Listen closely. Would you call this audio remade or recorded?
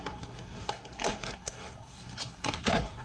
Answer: remade